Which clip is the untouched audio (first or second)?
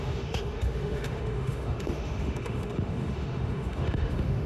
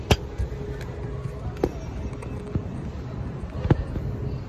second